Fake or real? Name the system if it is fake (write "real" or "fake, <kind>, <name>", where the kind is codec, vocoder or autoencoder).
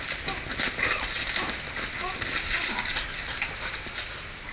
real